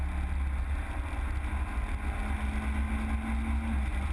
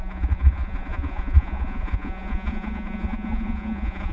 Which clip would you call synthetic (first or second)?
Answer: second